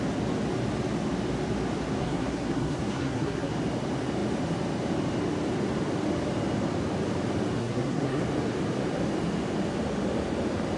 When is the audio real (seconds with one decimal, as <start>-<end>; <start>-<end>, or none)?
0.0-2.0; 3.5-7.6; 8.2-10.8